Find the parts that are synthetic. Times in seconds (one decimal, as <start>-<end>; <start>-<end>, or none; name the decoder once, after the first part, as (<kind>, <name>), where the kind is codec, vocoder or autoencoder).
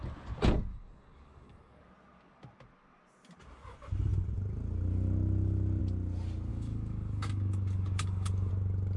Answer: 0.7-1.8 (codec, DAC); 6.5-8.5